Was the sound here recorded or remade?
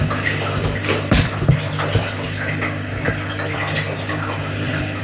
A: recorded